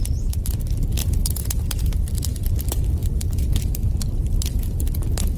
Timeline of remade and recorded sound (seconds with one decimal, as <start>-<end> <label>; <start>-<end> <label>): 0.0-1.0 recorded; 1.0-1.9 remade; 1.9-5.4 recorded